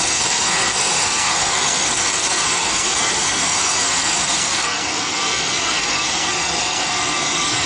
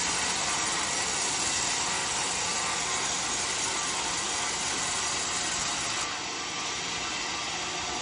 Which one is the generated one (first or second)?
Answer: first